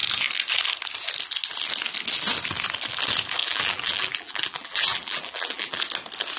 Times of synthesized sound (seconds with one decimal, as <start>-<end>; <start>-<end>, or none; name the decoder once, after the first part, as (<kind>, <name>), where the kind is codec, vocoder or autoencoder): 3.4-5.8 (vocoder, BigVGAN v2)